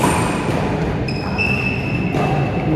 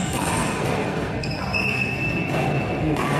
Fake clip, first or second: second